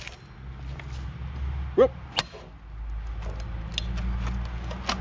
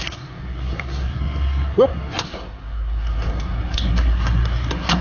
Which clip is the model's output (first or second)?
second